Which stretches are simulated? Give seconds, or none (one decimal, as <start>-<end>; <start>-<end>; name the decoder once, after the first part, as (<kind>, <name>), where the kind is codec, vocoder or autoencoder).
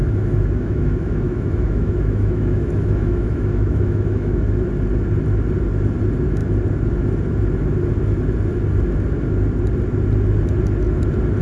0.0-4.6 (autoencoder, DAC-VAE)